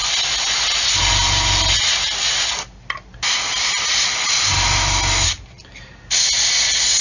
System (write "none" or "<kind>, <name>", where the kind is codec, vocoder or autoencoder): none